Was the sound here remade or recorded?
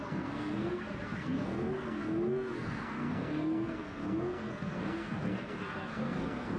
remade